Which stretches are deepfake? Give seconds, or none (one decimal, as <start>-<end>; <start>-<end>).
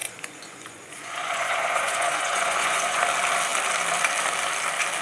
0.0-3.0